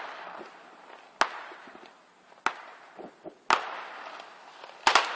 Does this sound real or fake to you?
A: real